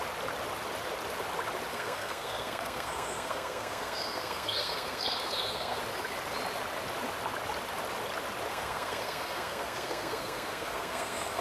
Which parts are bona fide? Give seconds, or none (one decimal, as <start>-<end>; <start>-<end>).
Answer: 0.0-1.7; 5.8-8.5